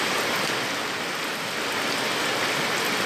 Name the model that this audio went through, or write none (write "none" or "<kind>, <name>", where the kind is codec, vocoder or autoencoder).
none